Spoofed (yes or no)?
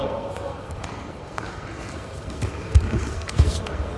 yes